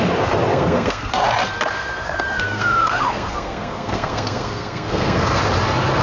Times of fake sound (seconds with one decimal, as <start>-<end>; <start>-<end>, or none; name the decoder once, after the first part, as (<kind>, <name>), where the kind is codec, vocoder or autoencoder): 0.5-1.1 (codec, SNAC); 1.8-5.4